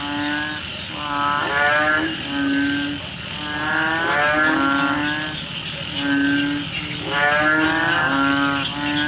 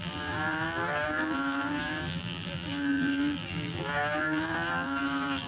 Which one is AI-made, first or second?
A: second